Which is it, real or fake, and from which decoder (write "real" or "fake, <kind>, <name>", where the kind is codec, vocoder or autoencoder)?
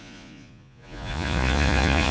fake, vocoder, Vocos